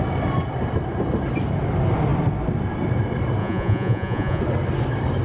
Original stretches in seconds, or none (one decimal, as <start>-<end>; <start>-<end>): 0.0-3.4; 4.4-5.2